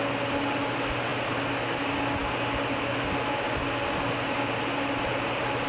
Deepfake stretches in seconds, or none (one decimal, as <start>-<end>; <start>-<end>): none